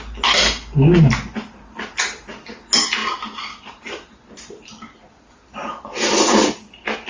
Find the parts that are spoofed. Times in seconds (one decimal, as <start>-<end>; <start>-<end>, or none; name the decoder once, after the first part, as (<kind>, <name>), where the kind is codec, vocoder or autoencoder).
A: none